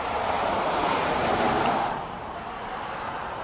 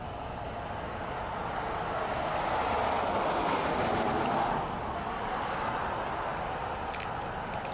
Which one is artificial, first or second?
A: first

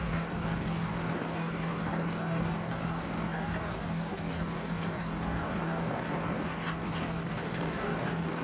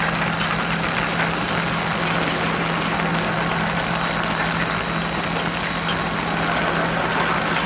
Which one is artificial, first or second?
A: first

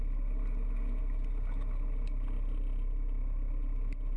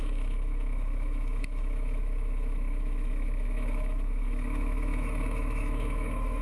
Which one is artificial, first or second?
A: second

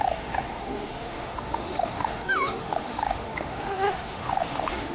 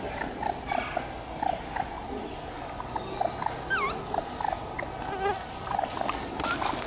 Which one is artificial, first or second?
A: first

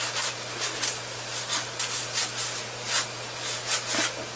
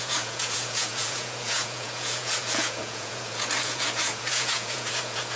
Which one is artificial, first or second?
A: second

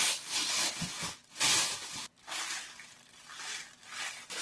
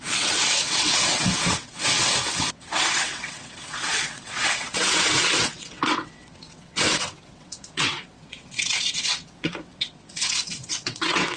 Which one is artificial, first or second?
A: second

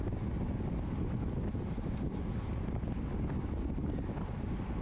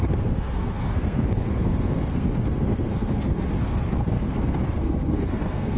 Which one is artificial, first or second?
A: second